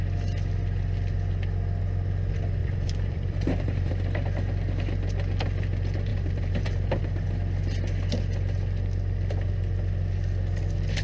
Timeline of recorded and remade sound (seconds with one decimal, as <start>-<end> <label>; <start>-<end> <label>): 0.0-2.6 recorded; 2.6-3.9 remade; 3.9-6.1 recorded; 6.1-7.0 remade; 7.0-11.0 recorded